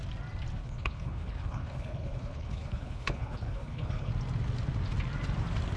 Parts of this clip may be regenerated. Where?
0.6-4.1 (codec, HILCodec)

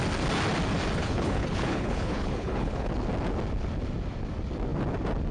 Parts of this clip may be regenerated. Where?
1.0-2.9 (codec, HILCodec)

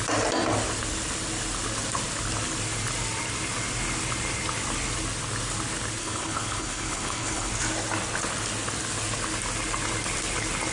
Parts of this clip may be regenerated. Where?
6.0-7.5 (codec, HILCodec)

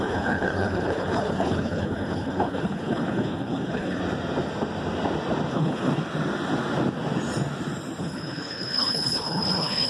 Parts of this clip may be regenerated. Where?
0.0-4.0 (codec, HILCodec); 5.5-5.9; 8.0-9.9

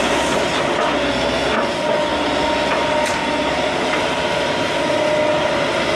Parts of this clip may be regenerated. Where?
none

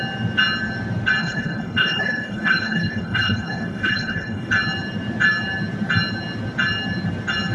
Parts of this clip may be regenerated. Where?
1.2-4.5 (codec, HILCodec)